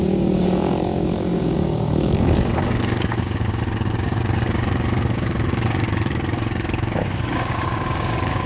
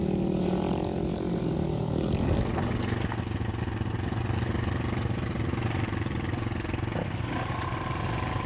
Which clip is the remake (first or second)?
first